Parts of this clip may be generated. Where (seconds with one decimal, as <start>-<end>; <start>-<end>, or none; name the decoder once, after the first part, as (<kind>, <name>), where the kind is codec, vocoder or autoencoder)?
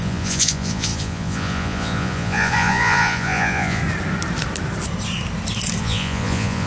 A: 0.0-3.8 (vocoder, Vocos); 5.8-6.7